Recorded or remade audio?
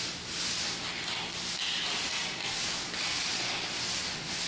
recorded